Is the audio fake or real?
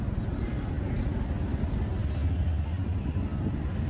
real